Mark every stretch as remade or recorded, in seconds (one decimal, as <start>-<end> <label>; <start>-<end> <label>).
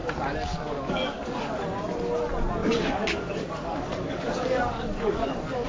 0.0-1.6 remade; 1.6-2.6 recorded; 2.6-5.7 remade